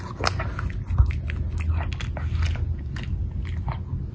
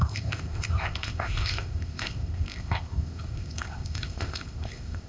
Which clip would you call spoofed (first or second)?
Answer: second